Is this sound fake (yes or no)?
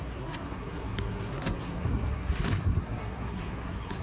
yes